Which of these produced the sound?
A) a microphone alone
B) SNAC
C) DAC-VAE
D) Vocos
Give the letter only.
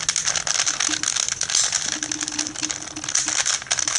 A